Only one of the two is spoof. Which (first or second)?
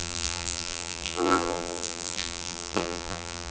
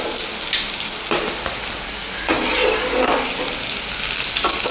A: first